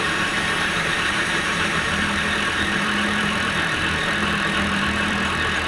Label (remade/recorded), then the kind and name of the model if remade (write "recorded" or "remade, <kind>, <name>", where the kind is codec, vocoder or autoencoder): remade, vocoder, BigVGAN v2